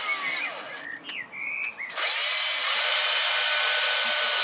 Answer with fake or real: real